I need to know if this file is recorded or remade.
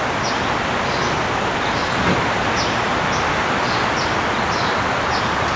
recorded